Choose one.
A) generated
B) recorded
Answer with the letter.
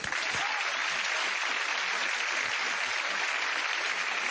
B